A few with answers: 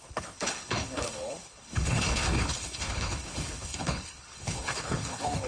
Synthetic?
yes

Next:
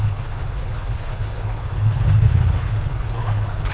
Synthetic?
yes